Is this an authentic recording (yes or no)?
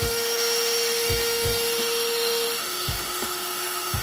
no